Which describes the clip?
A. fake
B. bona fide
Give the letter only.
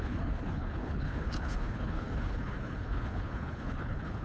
A